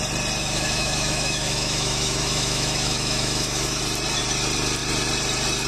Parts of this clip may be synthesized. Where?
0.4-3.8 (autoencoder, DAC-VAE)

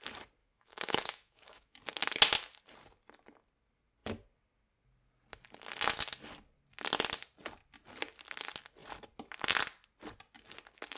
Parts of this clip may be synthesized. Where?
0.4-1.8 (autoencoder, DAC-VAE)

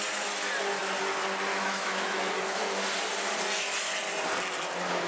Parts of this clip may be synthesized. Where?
1.5-2.4 (autoencoder, DAC-VAE)